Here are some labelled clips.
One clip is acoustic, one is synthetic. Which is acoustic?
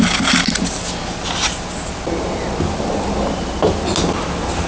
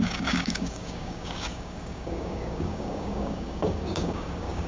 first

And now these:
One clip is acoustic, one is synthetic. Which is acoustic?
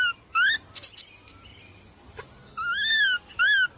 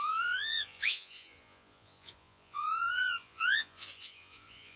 first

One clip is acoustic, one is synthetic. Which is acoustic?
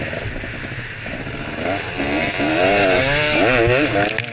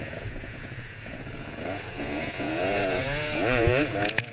first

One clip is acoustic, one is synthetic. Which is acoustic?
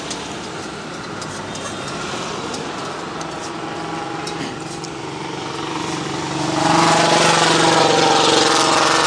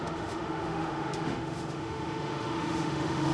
first